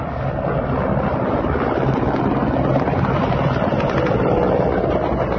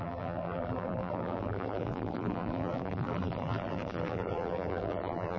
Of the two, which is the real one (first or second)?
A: first